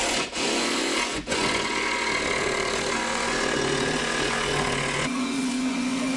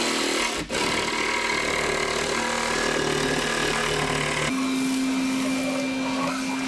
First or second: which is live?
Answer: second